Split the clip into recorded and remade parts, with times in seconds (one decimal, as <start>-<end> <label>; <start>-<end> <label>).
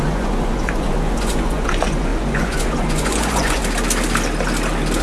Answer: 0.0-3.6 remade; 3.6-5.0 recorded